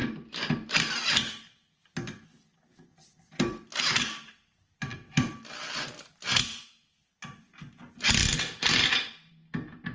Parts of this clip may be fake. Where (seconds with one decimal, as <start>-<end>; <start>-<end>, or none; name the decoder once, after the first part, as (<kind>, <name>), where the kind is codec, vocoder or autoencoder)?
none